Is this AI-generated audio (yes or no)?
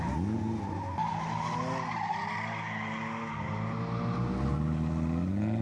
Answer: no